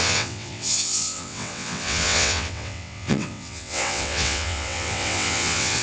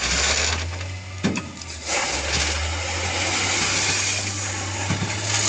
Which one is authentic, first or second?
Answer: second